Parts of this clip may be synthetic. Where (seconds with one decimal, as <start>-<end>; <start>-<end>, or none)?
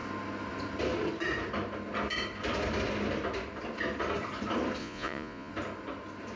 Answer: 4.8-5.5